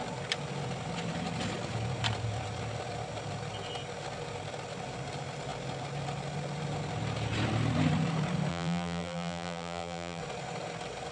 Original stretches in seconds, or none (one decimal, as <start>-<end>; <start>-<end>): 0.0-8.5; 10.2-11.1